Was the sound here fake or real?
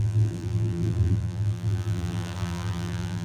fake